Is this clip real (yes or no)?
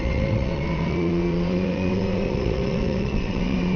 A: no